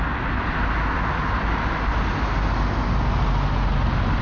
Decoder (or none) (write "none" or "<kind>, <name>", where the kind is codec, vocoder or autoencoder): none